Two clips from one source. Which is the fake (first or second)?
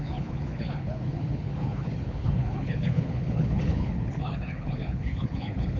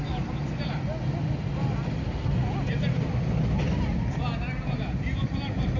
first